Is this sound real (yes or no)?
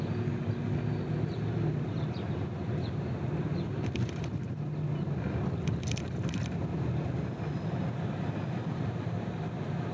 yes